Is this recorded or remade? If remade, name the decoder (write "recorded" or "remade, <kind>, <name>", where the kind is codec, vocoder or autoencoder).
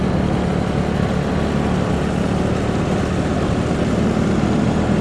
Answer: recorded